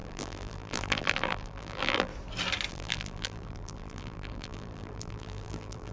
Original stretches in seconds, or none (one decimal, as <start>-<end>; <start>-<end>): 2.1-2.7

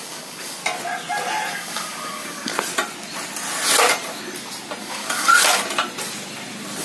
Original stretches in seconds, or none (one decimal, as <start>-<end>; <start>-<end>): 0.6-1.5; 2.5-4.8; 5.3-6.8

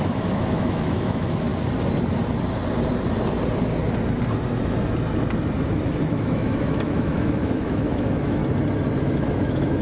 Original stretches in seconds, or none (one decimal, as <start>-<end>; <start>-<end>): 1.5-6.1; 8.4-9.0

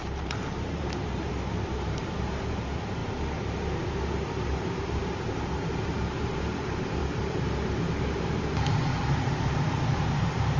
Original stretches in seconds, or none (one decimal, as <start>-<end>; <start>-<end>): 3.0-4.6; 5.0-5.7